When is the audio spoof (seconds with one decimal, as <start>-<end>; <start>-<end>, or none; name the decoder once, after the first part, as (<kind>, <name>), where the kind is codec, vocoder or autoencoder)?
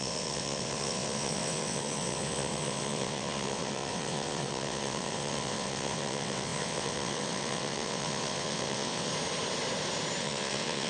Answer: 0.0-9.1 (vocoder, WaveNeXt); 10.2-10.9